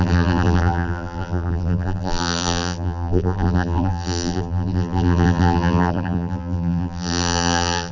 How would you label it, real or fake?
fake